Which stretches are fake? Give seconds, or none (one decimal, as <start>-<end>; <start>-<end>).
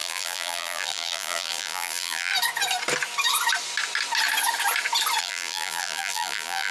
0.0-2.3; 5.2-6.7